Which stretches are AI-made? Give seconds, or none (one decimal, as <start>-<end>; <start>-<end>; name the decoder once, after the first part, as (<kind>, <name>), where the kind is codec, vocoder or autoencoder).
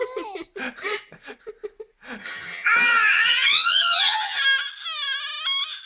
2.2-4.4 (vocoder, HiFi-GAN)